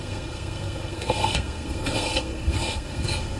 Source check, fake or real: fake